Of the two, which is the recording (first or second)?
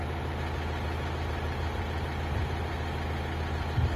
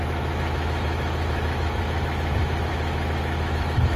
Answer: first